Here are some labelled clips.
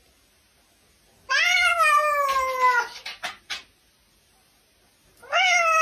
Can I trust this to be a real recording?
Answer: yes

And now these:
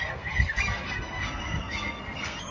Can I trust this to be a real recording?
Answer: no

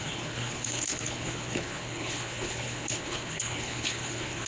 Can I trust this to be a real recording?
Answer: no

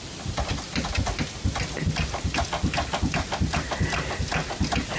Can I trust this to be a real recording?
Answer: yes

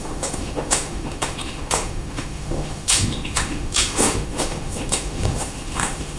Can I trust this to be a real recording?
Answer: no